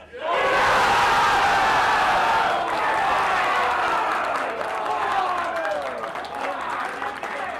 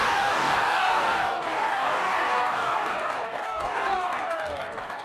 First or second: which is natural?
first